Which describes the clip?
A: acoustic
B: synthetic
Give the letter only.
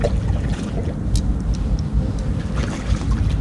A